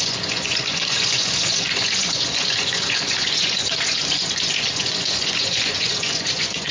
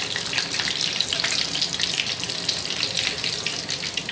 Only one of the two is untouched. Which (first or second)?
second